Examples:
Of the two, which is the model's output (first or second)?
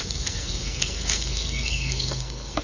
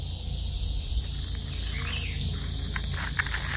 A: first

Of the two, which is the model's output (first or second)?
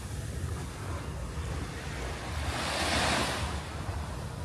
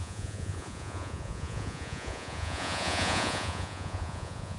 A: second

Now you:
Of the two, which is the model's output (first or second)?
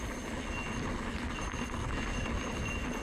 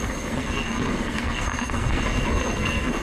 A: second